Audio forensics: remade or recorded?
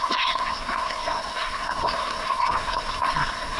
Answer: remade